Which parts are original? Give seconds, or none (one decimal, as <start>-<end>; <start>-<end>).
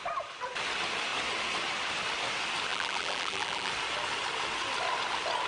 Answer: 0.0-2.7; 3.7-5.5